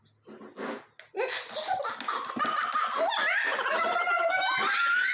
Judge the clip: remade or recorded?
recorded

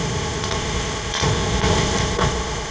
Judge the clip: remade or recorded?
remade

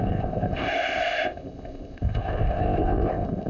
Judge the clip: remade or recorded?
remade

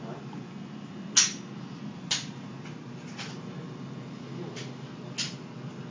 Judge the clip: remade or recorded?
recorded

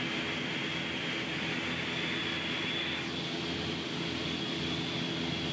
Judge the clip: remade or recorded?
recorded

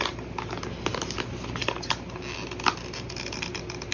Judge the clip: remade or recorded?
recorded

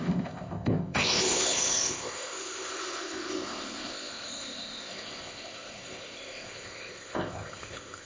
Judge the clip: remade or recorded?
remade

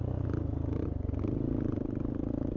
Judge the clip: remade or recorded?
recorded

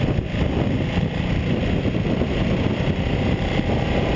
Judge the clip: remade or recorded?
recorded